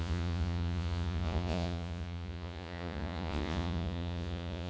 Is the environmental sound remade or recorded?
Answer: remade